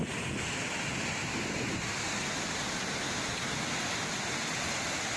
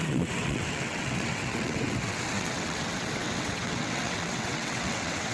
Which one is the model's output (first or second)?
second